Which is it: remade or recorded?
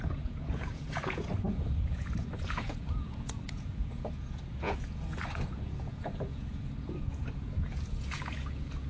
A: remade